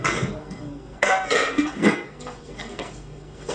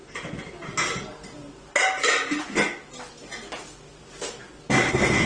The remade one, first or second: first